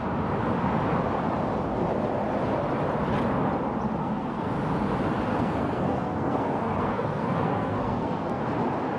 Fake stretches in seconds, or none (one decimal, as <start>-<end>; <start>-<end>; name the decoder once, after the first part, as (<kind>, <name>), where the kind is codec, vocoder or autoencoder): 4.0-4.5 (codec, SNAC); 5.3-8.4